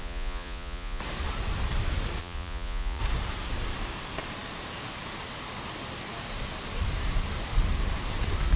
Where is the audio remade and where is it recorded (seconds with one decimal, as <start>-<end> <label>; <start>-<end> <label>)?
0.0-1.0 remade; 1.0-2.2 recorded; 2.2-3.0 remade; 3.0-8.6 recorded

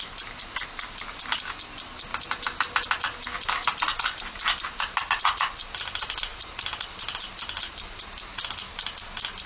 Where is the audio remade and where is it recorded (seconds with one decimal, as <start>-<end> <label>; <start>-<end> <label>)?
0.0-9.5 recorded

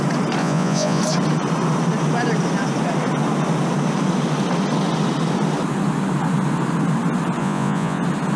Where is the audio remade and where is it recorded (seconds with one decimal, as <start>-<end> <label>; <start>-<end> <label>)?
0.0-0.4 recorded; 0.4-1.0 remade; 1.0-7.4 recorded; 7.4-8.0 remade; 8.0-8.4 recorded

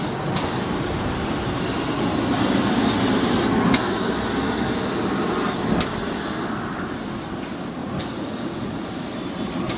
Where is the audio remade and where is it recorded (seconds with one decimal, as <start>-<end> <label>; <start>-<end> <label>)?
0.0-7.8 recorded; 7.8-8.9 remade; 8.9-9.8 recorded

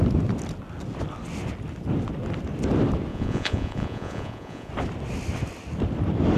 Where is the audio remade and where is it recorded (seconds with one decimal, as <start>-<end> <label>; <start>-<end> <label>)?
0.0-3.1 recorded; 3.1-4.7 remade; 4.7-6.4 recorded